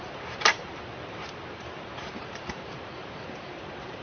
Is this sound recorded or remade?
remade